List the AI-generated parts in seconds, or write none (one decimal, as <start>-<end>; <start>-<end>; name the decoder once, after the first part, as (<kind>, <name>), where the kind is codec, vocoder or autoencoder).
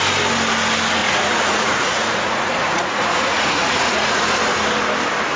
1.0-4.2 (vocoder, Vocos)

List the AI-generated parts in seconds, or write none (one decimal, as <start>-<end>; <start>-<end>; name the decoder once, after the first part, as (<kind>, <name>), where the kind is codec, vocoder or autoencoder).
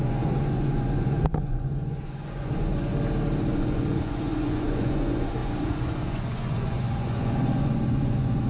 0.0-2.9 (vocoder, Vocos); 3.5-8.5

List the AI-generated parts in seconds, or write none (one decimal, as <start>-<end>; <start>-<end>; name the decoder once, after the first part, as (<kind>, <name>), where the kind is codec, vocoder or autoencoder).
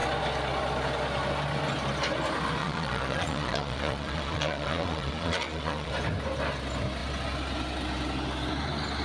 2.6-5.9 (vocoder, Vocos)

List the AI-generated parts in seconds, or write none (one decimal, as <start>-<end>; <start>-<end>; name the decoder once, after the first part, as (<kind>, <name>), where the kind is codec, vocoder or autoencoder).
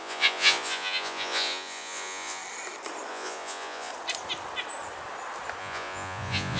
0.0-2.4 (vocoder, Vocos); 3.1-3.9; 5.6-6.6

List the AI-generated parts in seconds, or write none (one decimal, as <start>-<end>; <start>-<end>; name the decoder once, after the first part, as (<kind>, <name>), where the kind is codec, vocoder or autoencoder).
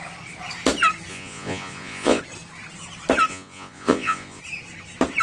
1.1-2.2 (vocoder, Vocos); 3.3-4.4